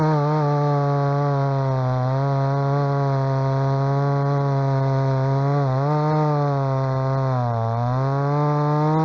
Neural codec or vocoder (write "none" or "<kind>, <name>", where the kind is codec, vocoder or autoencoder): none